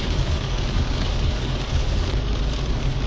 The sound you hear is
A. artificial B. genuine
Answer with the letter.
A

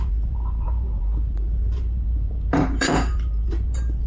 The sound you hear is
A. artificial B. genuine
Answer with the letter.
A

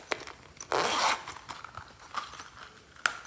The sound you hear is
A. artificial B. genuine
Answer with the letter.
B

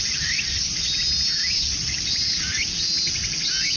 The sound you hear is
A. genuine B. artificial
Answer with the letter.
A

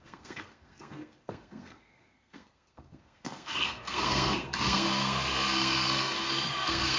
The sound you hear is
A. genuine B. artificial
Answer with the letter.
B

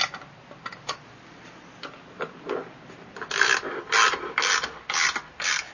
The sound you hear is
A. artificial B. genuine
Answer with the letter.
B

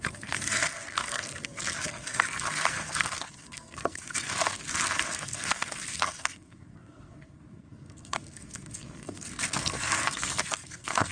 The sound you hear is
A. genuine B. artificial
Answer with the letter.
B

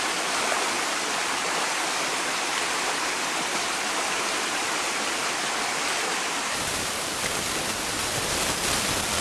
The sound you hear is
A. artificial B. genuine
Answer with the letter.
A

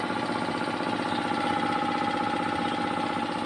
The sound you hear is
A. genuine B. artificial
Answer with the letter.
A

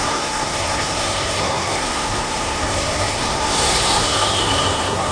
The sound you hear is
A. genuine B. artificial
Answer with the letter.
B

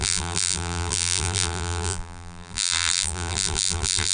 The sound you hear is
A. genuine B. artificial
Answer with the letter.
B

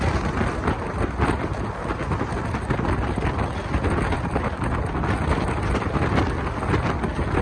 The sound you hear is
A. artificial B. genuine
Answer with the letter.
B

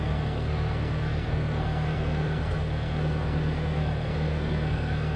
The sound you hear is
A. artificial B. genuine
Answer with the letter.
A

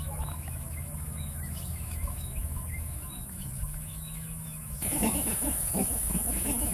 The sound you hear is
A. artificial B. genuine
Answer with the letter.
A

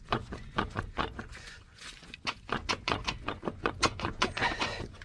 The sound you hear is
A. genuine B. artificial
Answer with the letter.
B